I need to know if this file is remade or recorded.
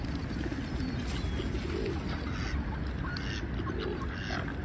recorded